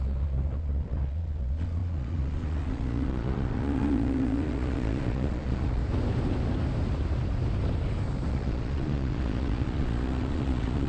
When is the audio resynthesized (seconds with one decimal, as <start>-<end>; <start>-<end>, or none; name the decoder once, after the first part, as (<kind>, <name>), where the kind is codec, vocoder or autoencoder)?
0.0-5.8 (vocoder, Vocos); 8.3-10.9

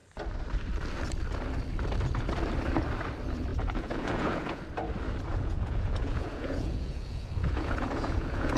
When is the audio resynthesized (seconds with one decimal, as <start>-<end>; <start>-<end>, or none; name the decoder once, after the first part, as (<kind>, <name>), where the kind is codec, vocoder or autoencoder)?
3.5-4.6 (vocoder, Vocos); 5.3-8.6